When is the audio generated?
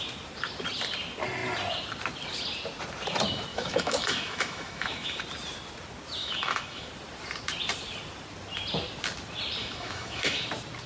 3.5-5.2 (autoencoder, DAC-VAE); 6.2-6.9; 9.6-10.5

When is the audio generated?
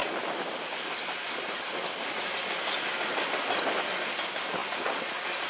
none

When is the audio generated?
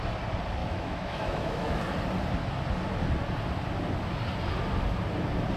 0.6-1.8 (autoencoder, DAC-VAE)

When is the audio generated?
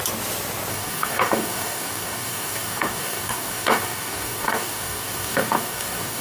0.7-6.2 (codec, DAC)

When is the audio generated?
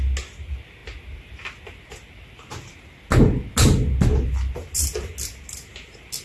none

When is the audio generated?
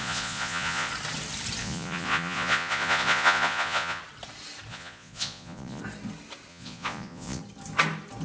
0.0-0.9 (vocoder, Vocos); 1.6-4.0; 4.7-5.8; 6.5-7.4